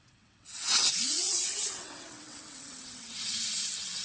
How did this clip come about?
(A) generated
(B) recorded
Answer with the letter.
A